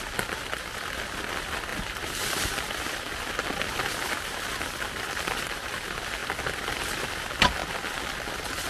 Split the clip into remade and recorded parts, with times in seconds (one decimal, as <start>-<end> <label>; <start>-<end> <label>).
0.0-1.7 recorded; 1.7-3.0 remade; 3.0-6.2 recorded; 6.2-7.1 remade; 7.1-8.7 recorded